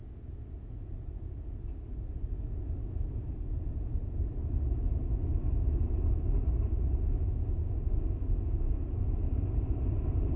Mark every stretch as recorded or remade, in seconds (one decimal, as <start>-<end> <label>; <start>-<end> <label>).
0.0-0.9 remade; 0.9-10.4 recorded

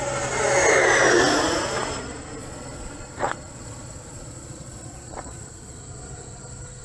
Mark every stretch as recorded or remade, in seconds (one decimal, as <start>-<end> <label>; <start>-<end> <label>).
0.0-2.4 recorded; 2.4-5.8 remade; 5.8-6.8 recorded